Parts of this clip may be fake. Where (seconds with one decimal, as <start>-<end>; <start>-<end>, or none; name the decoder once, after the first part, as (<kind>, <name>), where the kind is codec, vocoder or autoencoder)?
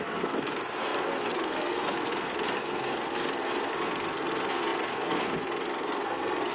0.0-6.5 (codec, SNAC)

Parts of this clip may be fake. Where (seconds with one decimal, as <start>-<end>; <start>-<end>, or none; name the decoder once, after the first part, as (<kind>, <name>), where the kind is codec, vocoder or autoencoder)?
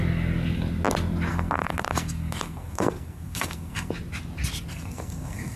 1.3-3.9 (codec, SNAC); 4.7-5.6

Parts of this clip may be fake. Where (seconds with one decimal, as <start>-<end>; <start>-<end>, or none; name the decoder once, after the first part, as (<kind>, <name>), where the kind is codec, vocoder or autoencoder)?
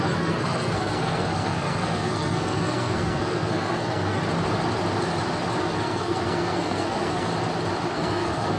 0.0-4.2 (codec, SNAC); 5.6-7.3; 7.9-8.6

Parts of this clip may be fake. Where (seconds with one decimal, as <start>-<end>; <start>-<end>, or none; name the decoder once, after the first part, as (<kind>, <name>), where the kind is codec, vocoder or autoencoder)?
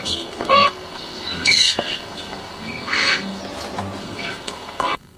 0.0-3.4 (codec, SNAC); 4.0-5.2